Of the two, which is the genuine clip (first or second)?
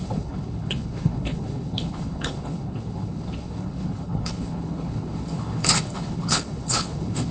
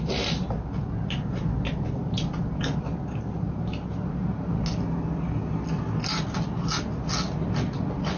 second